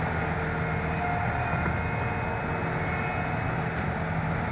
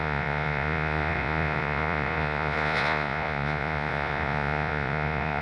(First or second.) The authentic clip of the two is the first